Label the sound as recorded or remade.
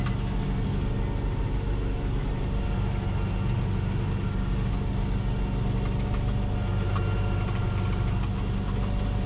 recorded